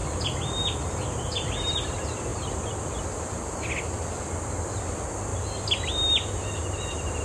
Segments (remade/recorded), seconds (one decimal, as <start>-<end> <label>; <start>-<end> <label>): 0.0-7.2 recorded

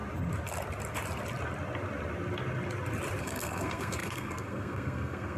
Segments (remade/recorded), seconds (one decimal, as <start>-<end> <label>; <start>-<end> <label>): 0.0-3.2 recorded; 3.2-5.4 remade

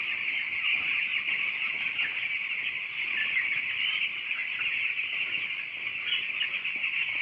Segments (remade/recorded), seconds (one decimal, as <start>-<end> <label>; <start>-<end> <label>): 0.0-7.2 recorded